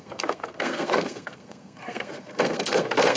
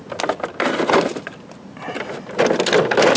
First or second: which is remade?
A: first